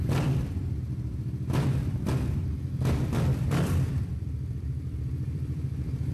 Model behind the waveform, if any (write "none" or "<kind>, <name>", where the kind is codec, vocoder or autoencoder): vocoder, BigVGAN v2